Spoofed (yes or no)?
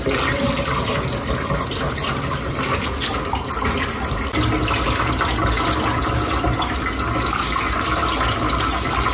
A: no